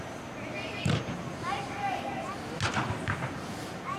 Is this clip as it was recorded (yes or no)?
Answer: yes